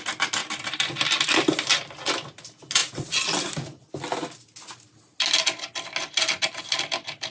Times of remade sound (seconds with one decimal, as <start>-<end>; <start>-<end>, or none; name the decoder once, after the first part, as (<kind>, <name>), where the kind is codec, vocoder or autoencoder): none